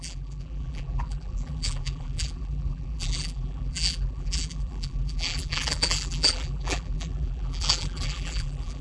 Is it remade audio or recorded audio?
remade